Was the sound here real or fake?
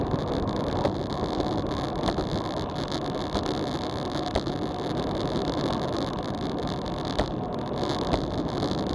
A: real